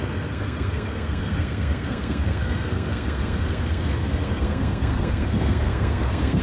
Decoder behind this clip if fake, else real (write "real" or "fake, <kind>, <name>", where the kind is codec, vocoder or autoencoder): fake, codec, SNAC